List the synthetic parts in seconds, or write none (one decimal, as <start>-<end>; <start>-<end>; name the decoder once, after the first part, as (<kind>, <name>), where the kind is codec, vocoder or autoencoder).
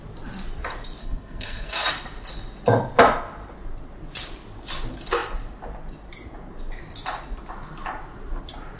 1.0-1.9 (codec, SNAC)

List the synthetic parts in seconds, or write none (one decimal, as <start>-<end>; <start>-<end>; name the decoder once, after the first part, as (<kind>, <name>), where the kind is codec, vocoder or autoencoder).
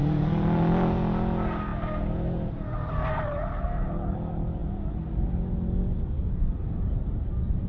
none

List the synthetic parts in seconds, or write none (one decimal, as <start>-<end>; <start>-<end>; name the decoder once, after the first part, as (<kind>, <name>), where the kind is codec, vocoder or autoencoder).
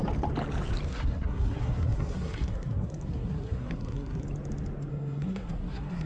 0.9-4.2 (codec, SNAC); 4.9-6.1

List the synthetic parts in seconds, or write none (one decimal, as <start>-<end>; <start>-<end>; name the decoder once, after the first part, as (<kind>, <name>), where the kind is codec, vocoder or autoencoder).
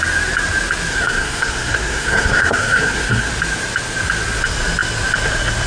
0.9-3.3 (codec, SNAC)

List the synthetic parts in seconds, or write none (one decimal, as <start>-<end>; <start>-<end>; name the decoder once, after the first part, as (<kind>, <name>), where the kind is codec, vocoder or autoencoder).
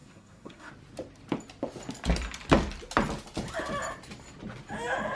0.0-0.7 (codec, SNAC)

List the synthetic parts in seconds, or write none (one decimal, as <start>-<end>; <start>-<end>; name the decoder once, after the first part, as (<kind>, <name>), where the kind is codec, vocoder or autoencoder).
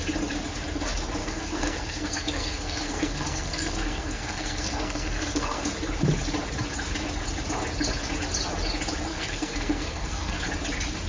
1.2-5.7 (codec, SNAC); 9.1-10.4